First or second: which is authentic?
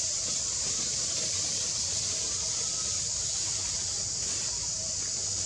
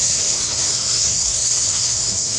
first